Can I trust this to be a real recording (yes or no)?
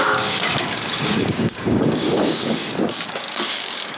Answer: no